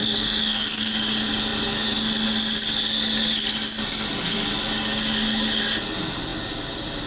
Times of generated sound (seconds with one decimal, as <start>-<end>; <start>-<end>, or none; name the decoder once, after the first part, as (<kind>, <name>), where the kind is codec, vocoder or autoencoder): 0.0-0.9 (codec, SNAC)